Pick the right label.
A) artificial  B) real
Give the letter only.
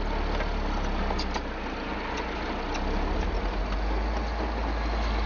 B